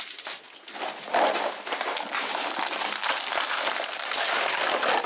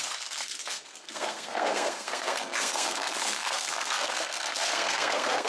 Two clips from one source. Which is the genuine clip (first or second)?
first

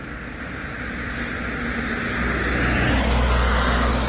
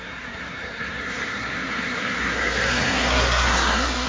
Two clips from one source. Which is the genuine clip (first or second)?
first